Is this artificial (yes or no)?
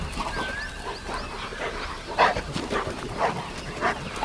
no